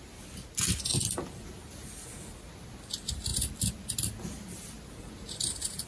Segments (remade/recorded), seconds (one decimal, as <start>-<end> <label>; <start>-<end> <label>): 0.0-5.9 recorded